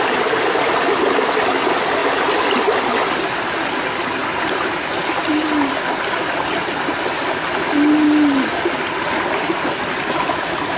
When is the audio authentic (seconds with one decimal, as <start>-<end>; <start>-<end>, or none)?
0.0-10.8